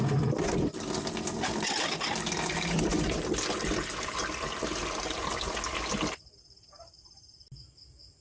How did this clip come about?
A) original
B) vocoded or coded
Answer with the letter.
A